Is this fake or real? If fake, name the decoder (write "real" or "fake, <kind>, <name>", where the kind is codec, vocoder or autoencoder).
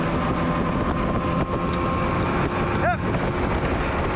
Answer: real